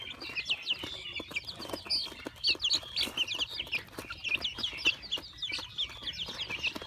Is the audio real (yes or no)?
yes